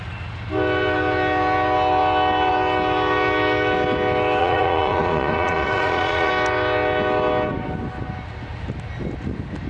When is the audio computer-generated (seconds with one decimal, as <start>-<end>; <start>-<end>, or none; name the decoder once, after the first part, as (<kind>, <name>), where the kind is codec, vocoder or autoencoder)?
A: 4.4-6.3 (vocoder, Vocos)